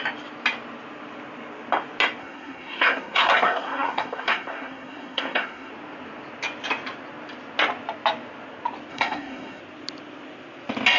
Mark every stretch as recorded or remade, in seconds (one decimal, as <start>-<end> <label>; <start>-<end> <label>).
0.0-2.2 recorded; 2.2-5.7 remade; 5.7-8.9 recorded; 8.9-9.6 remade; 9.6-11.0 recorded